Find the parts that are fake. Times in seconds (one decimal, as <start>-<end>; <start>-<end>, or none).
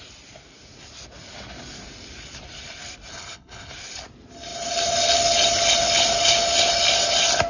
3.1-3.7